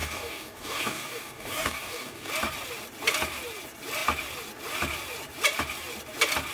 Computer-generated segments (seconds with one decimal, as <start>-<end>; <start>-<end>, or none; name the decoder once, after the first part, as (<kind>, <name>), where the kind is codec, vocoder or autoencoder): 0.0-2.3 (codec, DAC)